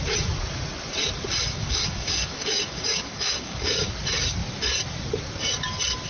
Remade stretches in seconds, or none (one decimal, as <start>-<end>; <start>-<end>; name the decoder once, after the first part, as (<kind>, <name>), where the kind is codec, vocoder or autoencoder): 1.5-3.9 (codec, DAC)